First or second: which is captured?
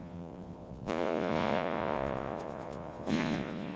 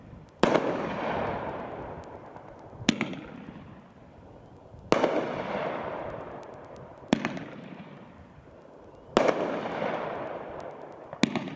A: second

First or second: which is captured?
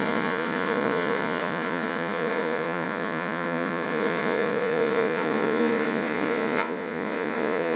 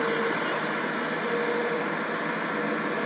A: second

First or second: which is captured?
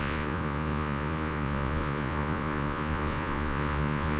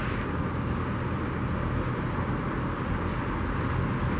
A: second